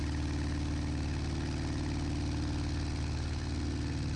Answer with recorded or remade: recorded